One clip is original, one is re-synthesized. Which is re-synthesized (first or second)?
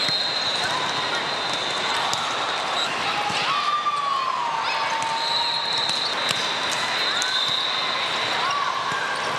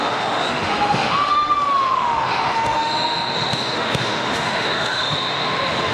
second